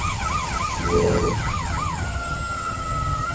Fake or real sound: fake